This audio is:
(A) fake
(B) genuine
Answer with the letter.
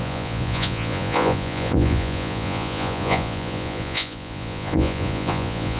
A